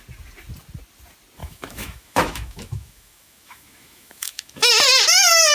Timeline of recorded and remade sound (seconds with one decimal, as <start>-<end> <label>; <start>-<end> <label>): 0.0-1.4 recorded; 1.4-4.7 remade; 4.7-5.5 recorded